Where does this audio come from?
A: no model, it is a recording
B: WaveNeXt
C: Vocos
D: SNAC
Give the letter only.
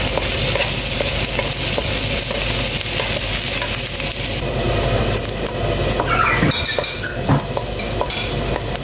A